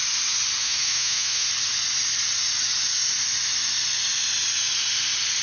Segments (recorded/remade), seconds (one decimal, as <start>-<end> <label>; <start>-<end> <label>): 0.0-0.6 recorded; 0.6-1.5 remade; 1.5-5.4 recorded